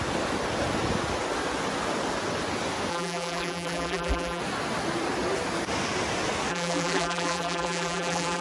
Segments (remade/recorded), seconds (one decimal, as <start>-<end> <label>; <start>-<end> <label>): 0.0-2.9 recorded; 2.9-4.4 remade; 4.4-6.5 recorded; 6.5-8.4 remade